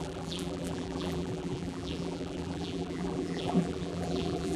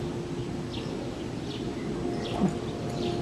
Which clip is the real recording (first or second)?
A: second